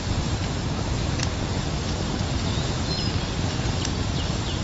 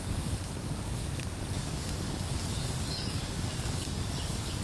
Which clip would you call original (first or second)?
first